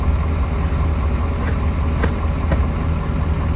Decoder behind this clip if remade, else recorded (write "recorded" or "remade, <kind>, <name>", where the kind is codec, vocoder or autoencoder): recorded